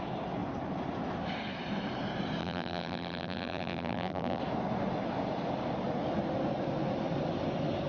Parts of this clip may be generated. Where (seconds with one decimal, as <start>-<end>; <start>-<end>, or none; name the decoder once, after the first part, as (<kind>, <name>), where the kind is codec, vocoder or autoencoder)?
2.4-4.4 (vocoder, BigVGAN v2)

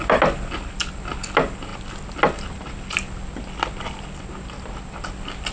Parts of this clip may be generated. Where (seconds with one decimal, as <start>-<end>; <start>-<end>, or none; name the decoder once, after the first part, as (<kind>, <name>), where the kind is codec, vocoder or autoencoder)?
none

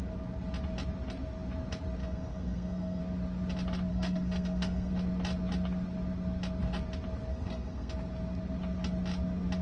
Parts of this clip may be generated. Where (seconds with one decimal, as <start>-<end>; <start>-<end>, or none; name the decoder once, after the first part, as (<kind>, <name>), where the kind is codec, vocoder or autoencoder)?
2.0-3.0 (codec, SNAC); 3.9-4.9; 7.3-7.9

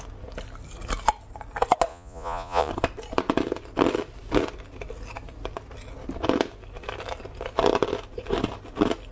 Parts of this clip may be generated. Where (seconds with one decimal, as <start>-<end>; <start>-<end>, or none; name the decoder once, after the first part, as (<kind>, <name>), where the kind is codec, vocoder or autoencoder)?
1.9-2.7 (vocoder, Vocos)